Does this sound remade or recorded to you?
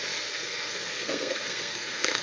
remade